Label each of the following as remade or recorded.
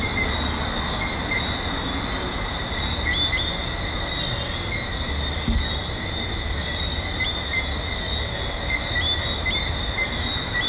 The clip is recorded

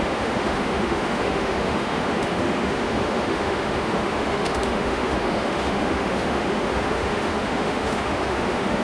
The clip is remade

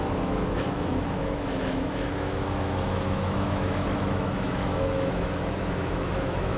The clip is remade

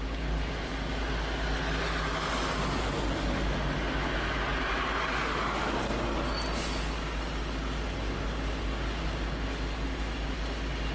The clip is recorded